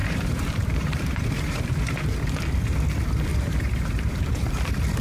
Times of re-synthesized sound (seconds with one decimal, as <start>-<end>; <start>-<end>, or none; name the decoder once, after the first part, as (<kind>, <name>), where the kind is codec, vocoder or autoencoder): 0.0-2.2 (vocoder, BigVGAN v2); 3.3-4.5